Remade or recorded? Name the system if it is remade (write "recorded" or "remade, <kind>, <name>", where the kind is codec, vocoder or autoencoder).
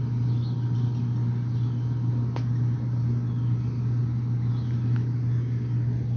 recorded